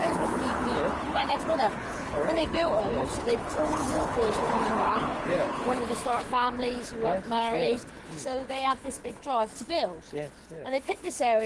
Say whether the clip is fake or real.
fake